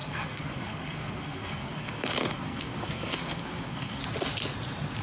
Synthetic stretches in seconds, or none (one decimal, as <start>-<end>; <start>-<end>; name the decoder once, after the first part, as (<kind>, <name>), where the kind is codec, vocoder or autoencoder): 0.0-4.0 (codec, SNAC)